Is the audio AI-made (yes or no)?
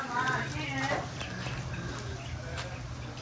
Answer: no